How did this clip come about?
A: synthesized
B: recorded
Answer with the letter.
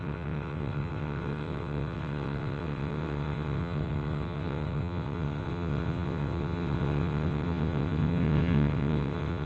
A